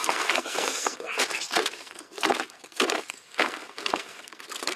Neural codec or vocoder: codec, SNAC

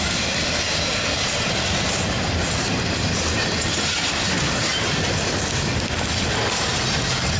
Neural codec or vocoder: none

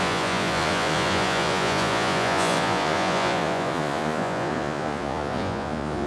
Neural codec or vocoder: vocoder, Vocos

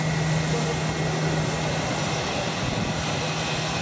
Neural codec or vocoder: none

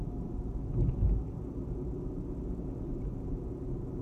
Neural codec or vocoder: none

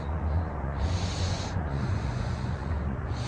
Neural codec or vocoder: vocoder, Vocos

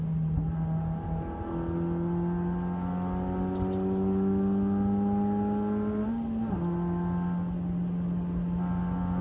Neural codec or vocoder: none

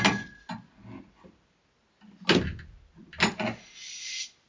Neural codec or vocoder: none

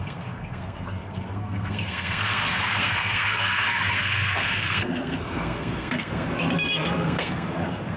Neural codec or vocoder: codec, SNAC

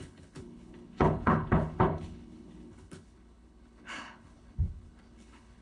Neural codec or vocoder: codec, HILCodec